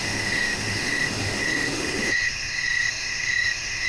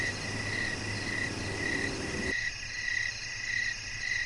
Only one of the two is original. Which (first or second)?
second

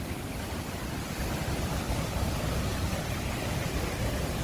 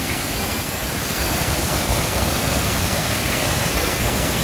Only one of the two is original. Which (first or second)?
first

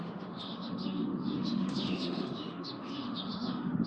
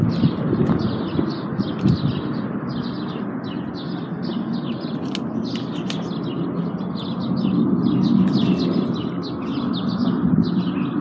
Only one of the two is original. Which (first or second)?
second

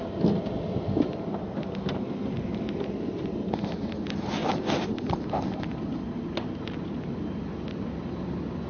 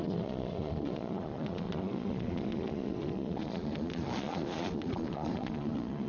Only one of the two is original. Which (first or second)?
first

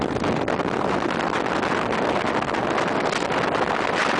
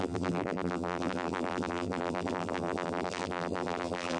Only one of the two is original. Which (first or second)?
first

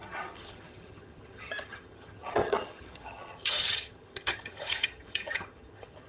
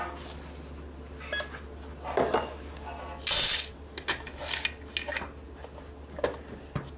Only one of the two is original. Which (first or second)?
second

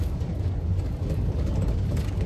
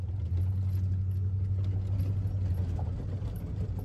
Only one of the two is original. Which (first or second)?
second